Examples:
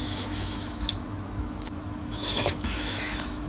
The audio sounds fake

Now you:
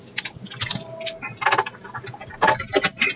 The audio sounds real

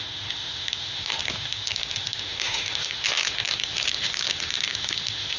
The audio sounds fake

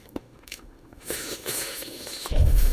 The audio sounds fake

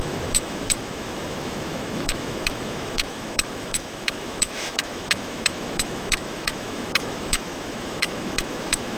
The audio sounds fake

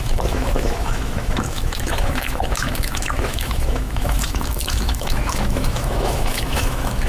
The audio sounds fake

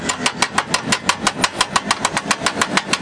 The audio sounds real